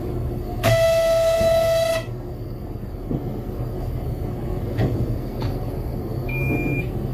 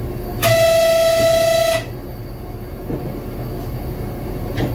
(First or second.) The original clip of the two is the second